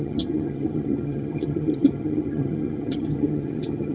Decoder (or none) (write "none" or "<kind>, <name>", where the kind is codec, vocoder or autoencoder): vocoder, HiFi-GAN